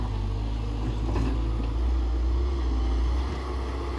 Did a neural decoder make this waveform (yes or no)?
no